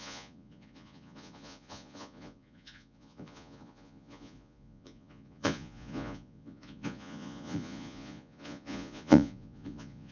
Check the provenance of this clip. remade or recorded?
remade